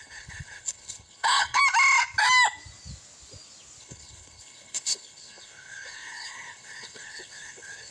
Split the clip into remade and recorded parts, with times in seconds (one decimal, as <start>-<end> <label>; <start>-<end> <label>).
0.0-1.6 remade; 1.6-3.8 recorded; 3.8-7.9 remade